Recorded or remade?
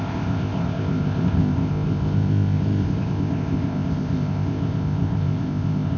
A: remade